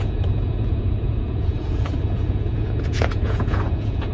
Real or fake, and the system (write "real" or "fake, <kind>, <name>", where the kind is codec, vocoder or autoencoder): fake, vocoder, Vocos